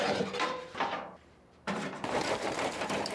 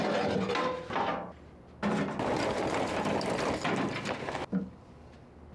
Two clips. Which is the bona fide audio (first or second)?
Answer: second